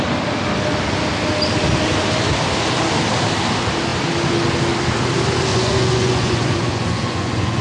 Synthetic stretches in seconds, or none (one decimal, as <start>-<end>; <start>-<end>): 5.5-7.6